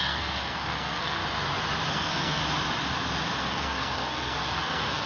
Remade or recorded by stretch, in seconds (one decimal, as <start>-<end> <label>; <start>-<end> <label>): 0.0-1.2 remade; 1.2-1.9 recorded; 1.9-2.4 remade; 2.4-3.4 recorded; 3.4-5.1 remade